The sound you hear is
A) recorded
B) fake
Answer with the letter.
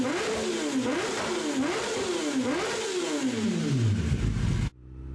A